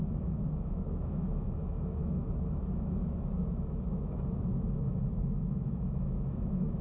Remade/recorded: remade